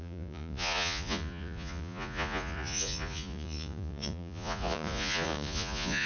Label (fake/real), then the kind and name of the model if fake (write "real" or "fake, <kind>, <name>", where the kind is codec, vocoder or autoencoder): fake, vocoder, Vocos